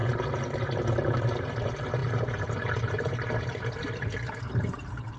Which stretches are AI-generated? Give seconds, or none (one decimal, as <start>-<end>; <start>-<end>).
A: 2.0-4.8